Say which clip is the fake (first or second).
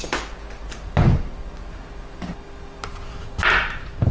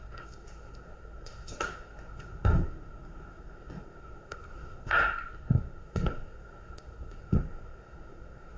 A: second